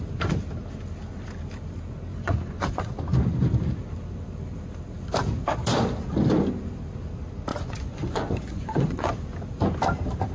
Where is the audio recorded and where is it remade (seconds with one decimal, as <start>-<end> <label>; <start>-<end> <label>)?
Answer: 0.0-2.1 recorded; 2.1-2.9 remade; 2.9-7.5 recorded; 7.5-9.1 remade; 9.1-10.3 recorded